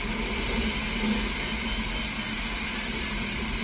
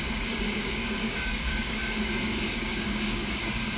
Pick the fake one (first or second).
second